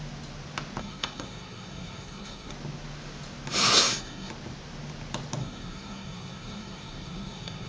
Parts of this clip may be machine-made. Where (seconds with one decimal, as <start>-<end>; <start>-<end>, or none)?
0.8-2.5; 3.6-4.3; 5.4-7.7